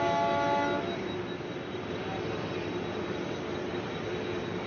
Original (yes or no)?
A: yes